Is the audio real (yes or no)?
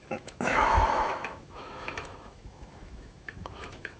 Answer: no